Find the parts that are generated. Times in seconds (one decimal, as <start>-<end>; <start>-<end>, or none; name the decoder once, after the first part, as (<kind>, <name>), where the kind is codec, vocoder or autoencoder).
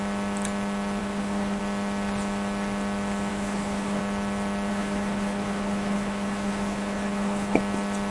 1.0-1.6 (codec, HILCodec); 3.3-4.0; 4.7-7.6